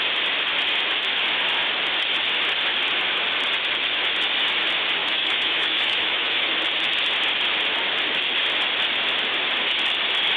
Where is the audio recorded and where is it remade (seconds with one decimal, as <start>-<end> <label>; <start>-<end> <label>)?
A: 0.0-5.0 recorded; 5.0-6.5 remade; 6.5-10.4 recorded